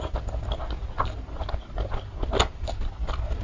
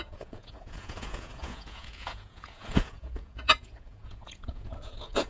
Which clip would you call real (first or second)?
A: first